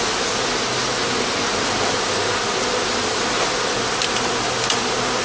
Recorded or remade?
recorded